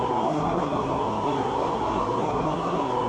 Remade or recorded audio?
remade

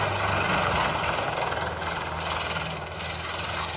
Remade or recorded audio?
recorded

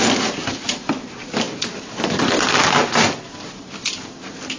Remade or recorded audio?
recorded